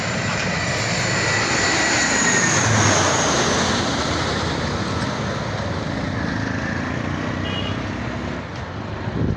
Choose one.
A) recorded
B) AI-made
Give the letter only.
A